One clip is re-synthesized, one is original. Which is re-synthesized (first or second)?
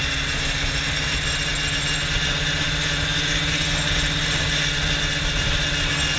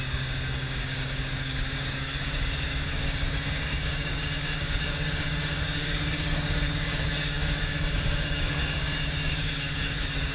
second